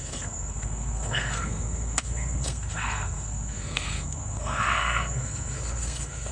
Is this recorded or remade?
remade